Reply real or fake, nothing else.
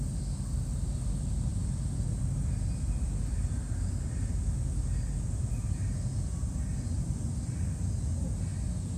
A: real